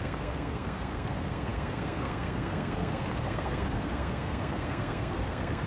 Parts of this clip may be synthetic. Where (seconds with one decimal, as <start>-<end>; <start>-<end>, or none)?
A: 0.0-5.7